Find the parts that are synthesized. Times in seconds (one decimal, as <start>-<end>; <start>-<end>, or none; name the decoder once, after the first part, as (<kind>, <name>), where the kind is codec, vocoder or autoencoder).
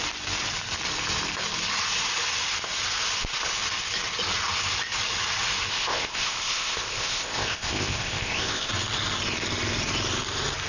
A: 5.7-8.7 (codec, ZipCodec)